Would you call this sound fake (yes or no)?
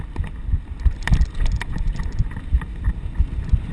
no